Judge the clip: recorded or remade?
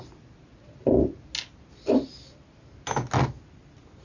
recorded